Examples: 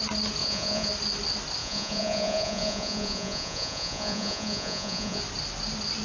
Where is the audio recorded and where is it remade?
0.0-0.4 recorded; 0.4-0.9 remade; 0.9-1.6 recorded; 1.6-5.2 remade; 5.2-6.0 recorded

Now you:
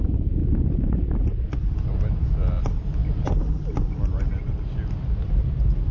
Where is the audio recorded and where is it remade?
0.0-5.9 recorded

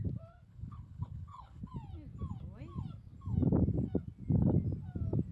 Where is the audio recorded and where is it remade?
0.0-0.5 recorded; 0.5-1.6 remade; 1.6-5.3 recorded

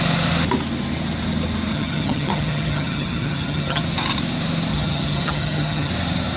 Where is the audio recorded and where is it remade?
0.0-1.7 recorded; 1.7-3.8 remade; 3.8-4.7 recorded; 4.7-5.9 remade; 5.9-6.4 recorded

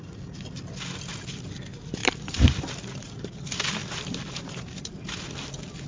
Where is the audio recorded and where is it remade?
0.0-2.0 recorded; 2.0-2.7 remade; 2.7-3.8 recorded; 3.8-5.0 remade; 5.0-5.9 recorded

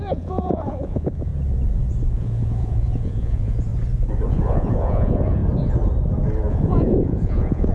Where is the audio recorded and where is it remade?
0.0-1.3 remade; 1.3-2.1 recorded; 2.1-3.7 remade; 3.7-4.3 recorded; 4.3-5.4 remade; 5.4-6.5 recorded; 6.5-7.7 remade

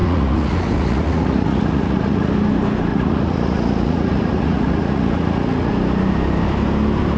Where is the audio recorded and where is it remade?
0.0-2.3 remade; 2.3-2.9 recorded; 2.9-5.7 remade; 5.7-7.2 recorded

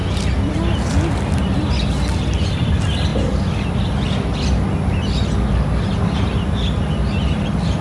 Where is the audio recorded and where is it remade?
0.0-7.8 recorded